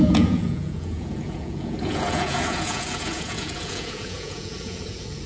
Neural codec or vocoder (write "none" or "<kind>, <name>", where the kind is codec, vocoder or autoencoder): vocoder, Vocos